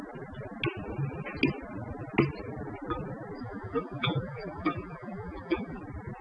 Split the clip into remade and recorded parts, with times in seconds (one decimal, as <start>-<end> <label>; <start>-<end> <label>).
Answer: 0.0-3.4 recorded; 3.4-5.8 remade; 5.8-6.2 recorded